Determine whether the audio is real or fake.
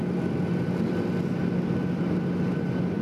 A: real